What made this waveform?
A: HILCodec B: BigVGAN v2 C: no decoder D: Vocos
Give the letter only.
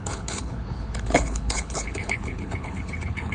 A